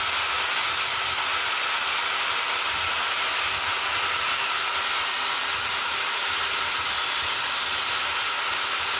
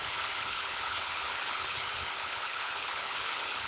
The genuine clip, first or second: first